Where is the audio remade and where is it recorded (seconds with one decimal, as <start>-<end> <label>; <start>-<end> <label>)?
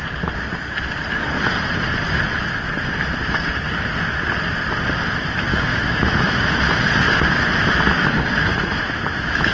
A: 0.0-5.5 recorded; 5.5-6.7 remade; 6.7-8.5 recorded; 8.5-9.5 remade